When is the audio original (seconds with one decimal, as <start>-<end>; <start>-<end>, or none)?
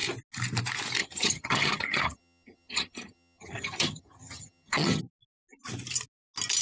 0.0-1.0; 5.0-6.6